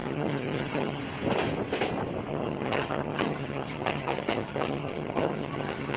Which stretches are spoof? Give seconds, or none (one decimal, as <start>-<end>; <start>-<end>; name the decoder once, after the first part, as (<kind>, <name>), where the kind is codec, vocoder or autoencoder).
0.0-1.0 (vocoder, HiFi-GAN); 2.3-6.0